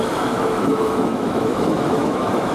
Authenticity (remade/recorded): remade